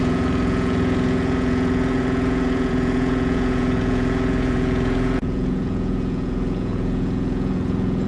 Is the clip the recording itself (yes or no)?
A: no